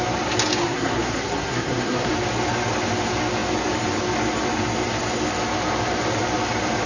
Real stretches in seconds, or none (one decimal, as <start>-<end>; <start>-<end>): 0.0-0.6; 2.1-6.9